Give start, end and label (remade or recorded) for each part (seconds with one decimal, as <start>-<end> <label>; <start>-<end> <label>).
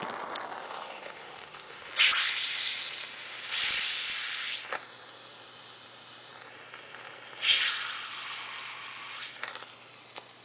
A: 0.0-0.6 recorded; 0.6-1.9 remade; 1.9-10.4 recorded